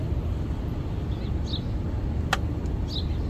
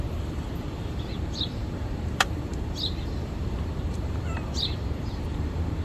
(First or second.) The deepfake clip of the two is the second